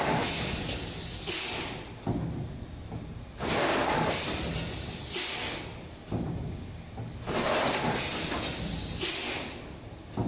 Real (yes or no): yes